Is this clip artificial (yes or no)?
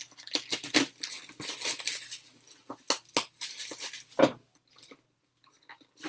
no